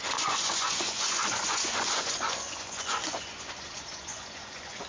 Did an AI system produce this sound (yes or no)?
yes